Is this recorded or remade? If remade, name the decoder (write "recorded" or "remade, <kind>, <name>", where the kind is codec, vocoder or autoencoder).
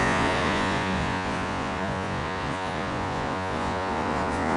remade, vocoder, Vocos